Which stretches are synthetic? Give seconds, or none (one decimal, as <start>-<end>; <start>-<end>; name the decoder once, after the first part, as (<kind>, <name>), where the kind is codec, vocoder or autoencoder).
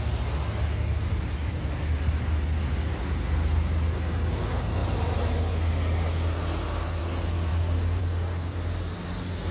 none